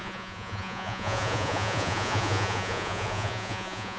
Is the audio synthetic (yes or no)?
yes